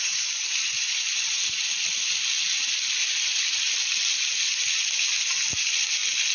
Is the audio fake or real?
real